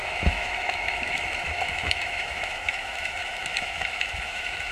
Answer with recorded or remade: remade